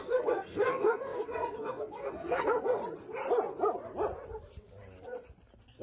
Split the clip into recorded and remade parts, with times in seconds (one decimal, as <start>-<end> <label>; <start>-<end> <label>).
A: 0.0-2.8 remade; 2.8-5.8 recorded